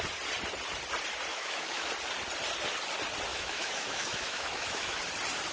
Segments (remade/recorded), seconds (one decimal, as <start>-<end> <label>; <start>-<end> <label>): 0.0-1.3 recorded; 1.3-1.9 remade; 1.9-3.3 recorded; 3.3-5.0 remade; 5.0-5.5 recorded